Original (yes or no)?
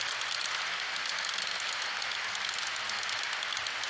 yes